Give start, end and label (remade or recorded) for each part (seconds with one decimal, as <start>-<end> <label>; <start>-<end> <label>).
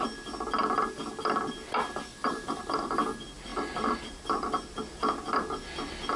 0.0-2.1 recorded; 2.1-2.6 remade; 2.6-3.5 recorded; 3.5-4.1 remade; 4.1-6.2 recorded